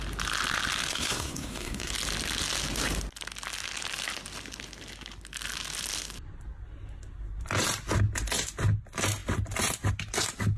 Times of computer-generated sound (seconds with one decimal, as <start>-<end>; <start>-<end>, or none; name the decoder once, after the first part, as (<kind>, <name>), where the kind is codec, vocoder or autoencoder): 0.9-1.9 (codec, SNAC)